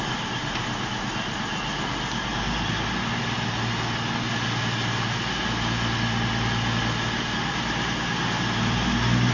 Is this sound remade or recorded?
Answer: recorded